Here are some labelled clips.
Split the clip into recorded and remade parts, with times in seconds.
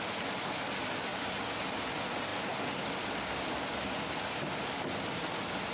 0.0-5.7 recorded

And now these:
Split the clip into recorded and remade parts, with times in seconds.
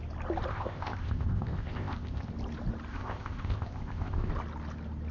0.0-0.5 recorded; 0.5-2.3 remade; 2.3-2.9 recorded; 2.9-4.3 remade; 4.3-5.1 recorded